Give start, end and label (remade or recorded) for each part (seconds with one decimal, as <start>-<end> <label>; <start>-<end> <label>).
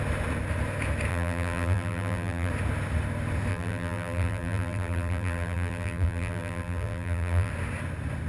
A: 0.0-1.1 recorded; 1.1-2.5 remade; 2.5-3.5 recorded; 3.5-7.5 remade; 7.5-8.3 recorded